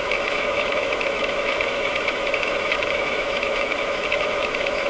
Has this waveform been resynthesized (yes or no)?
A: yes